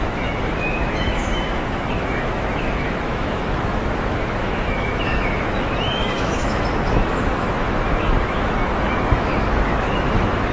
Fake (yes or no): yes